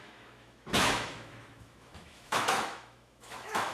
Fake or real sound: fake